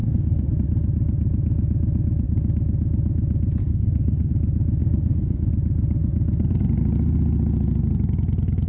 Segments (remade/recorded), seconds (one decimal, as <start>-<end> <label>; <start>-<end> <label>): 0.0-0.5 remade; 0.5-3.6 recorded; 3.6-4.3 remade; 4.3-4.8 recorded; 4.8-5.5 remade; 5.5-8.7 recorded